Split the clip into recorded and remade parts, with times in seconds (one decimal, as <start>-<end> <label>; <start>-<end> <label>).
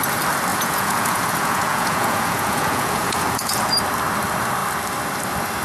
0.0-0.5 recorded; 0.5-3.7 remade; 3.7-5.6 recorded